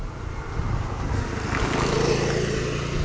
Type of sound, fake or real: real